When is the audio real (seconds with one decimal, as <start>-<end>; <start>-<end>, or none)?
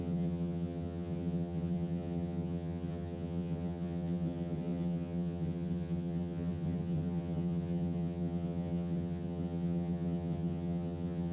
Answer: none